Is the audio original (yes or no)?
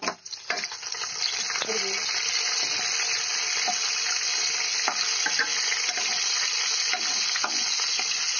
yes